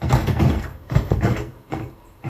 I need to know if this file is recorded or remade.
remade